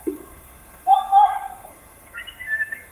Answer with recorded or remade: remade